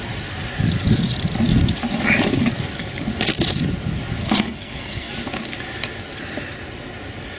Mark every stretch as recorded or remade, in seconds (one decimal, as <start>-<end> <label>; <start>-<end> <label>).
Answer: 0.0-4.2 recorded; 4.2-5.1 remade; 5.1-7.4 recorded